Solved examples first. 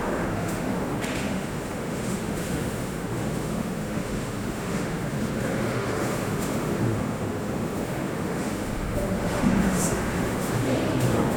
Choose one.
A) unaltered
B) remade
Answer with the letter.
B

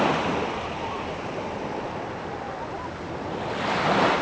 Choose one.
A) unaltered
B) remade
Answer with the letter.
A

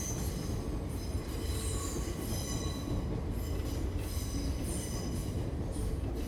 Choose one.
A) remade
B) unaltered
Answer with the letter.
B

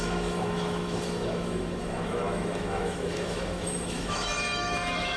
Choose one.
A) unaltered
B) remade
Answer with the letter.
B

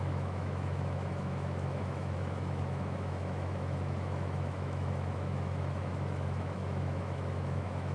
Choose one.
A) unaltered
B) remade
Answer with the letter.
B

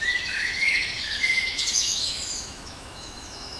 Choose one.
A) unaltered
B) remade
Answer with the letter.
B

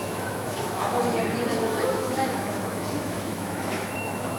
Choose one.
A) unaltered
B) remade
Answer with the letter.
B